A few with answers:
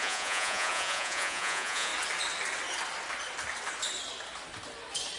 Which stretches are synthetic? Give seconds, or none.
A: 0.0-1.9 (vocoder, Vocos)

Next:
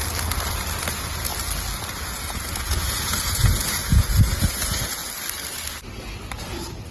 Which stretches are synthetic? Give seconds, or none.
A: 0.9-1.3 (vocoder, Vocos); 1.9-5.0; 6.5-6.9

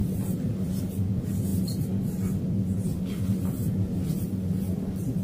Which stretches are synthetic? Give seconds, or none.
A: none